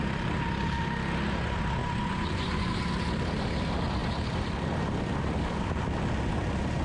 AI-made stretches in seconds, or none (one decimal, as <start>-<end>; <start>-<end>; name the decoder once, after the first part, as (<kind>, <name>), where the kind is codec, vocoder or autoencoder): 1.8-2.7 (vocoder, Vocos)